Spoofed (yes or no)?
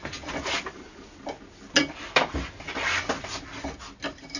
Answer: no